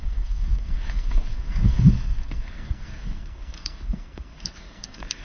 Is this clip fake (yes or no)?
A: yes